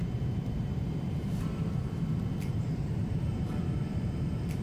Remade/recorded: remade